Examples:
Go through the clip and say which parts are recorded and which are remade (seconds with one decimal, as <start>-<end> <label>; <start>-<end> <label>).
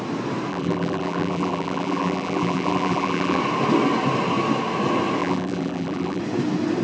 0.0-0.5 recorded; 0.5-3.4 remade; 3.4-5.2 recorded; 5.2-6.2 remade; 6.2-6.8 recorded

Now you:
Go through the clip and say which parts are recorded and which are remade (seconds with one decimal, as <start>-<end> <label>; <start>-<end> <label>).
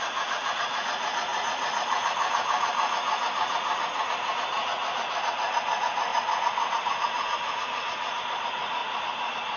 0.0-8.8 remade; 8.8-9.6 recorded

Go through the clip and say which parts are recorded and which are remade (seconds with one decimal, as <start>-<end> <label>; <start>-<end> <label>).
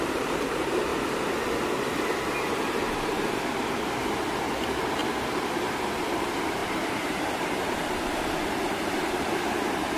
0.0-0.9 remade; 0.9-3.8 recorded; 3.8-5.0 remade; 5.0-6.1 recorded; 6.1-10.0 remade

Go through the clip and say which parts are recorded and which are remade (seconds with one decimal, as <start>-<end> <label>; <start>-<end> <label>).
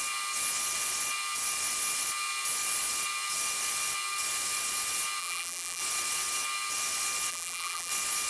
0.0-5.2 recorded; 5.2-5.8 remade; 5.8-7.3 recorded; 7.3-7.9 remade; 7.9-8.3 recorded